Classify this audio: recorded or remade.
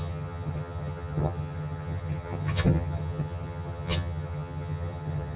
remade